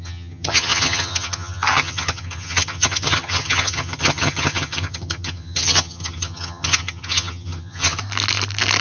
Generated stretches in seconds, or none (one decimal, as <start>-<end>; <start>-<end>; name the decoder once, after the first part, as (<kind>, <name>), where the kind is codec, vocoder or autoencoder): 0.0-8.0 (vocoder, HiFi-GAN)